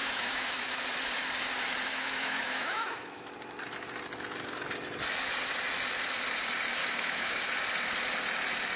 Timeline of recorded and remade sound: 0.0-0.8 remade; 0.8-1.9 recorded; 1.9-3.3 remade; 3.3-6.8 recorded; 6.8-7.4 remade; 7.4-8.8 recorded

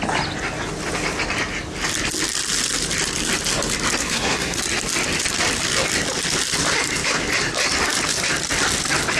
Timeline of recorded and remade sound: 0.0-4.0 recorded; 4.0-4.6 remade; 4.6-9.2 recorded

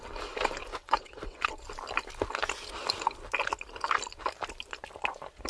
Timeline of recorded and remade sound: 0.0-0.7 recorded; 0.7-1.5 remade; 1.5-5.5 recorded

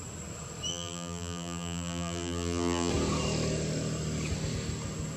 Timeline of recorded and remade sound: 0.0-0.7 recorded; 0.7-2.9 remade; 2.9-5.2 recorded

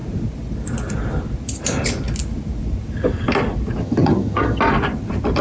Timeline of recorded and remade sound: 0.0-3.8 recorded; 3.8-4.6 remade; 4.6-5.4 recorded